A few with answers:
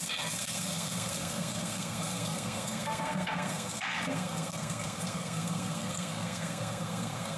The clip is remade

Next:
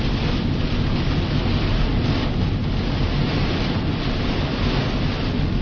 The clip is recorded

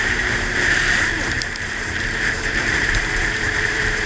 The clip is remade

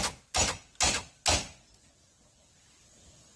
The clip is recorded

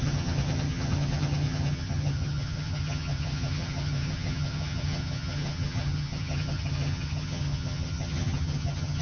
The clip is remade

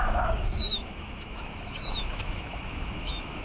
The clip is remade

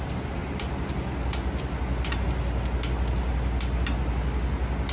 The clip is recorded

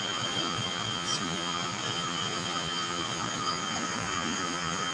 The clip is remade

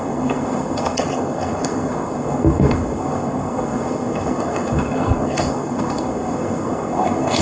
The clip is remade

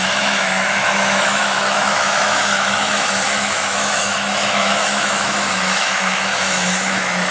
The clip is remade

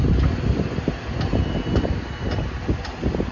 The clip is recorded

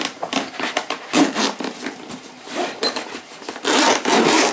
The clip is remade